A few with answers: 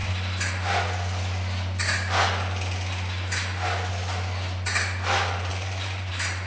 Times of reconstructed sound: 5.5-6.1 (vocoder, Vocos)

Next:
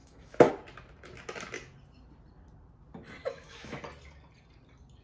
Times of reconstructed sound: 0.0-0.5 (autoencoder, DAC-VAE); 3.2-3.8

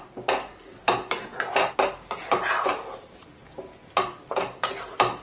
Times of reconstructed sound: 0.0-1.3 (vocoder, BigVGAN v2); 1.9-3.4; 3.9-5.2

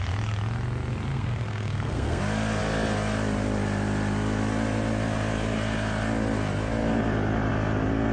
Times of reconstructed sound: 1.1-2.2 (codec, SNAC)

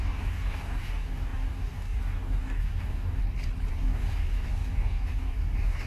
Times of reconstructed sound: 0.0-3.2 (codec, DAC); 3.7-5.9

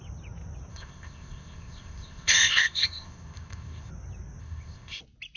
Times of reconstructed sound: 0.7-3.9 (codec, ZipCodec); 4.4-5.0